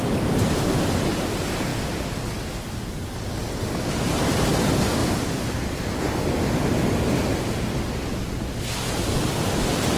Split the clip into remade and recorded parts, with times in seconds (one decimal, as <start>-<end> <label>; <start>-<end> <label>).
0.0-10.0 recorded